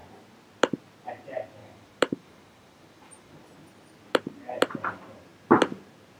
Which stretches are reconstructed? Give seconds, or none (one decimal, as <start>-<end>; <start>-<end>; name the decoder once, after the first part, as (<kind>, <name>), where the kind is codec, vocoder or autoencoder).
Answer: 1.6-3.4 (vocoder, BigVGAN v2)